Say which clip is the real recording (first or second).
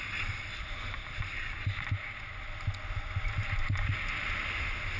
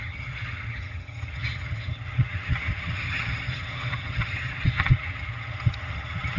first